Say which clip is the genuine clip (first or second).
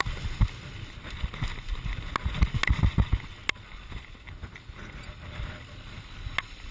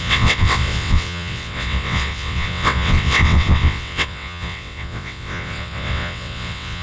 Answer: first